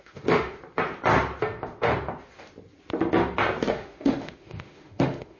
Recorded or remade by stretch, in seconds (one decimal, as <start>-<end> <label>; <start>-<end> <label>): 0.0-0.6 remade; 0.6-1.4 recorded; 1.4-1.9 remade; 1.9-3.7 recorded; 3.7-5.4 remade